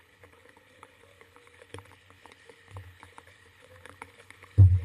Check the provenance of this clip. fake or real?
fake